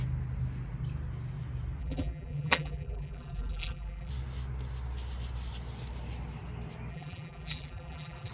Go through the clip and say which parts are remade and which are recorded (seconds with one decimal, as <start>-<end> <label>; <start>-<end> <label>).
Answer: 0.0-1.8 recorded; 1.8-4.1 remade; 4.1-6.9 recorded; 6.9-8.3 remade